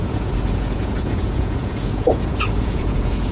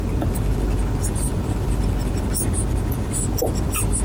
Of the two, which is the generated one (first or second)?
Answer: first